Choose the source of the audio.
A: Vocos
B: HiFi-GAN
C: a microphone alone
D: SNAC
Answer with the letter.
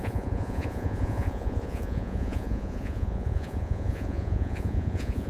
A